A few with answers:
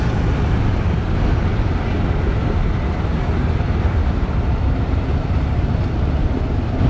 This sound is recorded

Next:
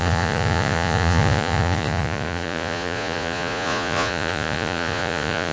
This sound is remade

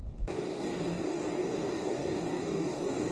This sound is remade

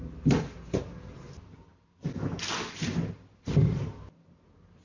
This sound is recorded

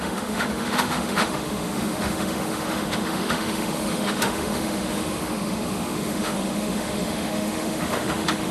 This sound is remade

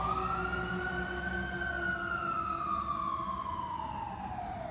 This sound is recorded